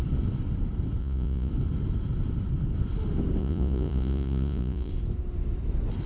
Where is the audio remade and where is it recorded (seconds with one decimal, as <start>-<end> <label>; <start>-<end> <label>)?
0.0-1.0 recorded; 1.0-1.5 remade; 1.5-3.4 recorded; 3.4-4.9 remade; 4.9-6.1 recorded